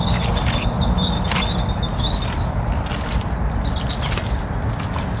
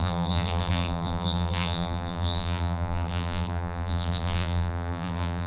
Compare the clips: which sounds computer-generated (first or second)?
second